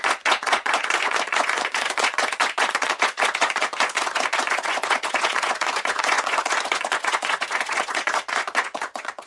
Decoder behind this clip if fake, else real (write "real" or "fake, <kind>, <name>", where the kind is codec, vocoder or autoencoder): fake, vocoder, Vocos